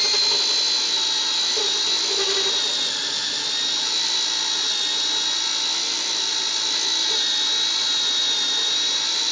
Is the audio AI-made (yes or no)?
no